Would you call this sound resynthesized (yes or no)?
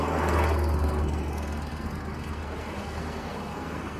yes